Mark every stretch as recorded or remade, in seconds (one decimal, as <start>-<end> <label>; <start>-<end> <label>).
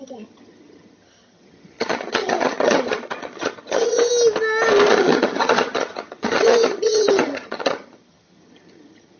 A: 0.0-4.1 remade; 4.1-4.9 recorded; 4.9-9.2 remade